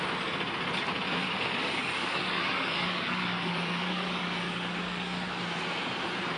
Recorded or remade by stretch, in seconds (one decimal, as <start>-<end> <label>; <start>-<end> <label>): 0.0-1.6 recorded; 1.6-5.4 remade; 5.4-6.4 recorded